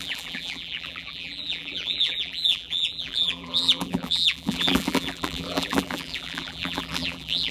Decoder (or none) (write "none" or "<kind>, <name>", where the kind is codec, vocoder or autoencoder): vocoder, BigVGAN v2